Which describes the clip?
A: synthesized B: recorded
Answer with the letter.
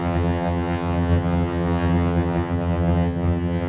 A